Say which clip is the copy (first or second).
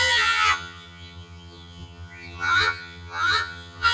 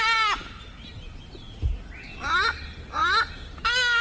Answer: first